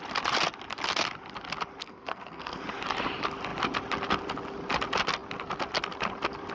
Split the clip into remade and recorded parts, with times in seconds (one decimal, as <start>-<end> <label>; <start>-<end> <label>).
0.0-1.8 recorded; 1.8-2.6 remade; 2.6-6.5 recorded